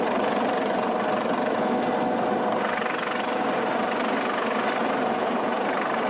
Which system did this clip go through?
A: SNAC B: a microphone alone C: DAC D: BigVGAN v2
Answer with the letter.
B